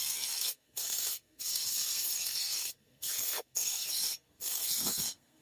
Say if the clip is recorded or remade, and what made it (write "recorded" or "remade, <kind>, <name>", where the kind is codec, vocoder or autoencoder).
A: remade, codec, SNAC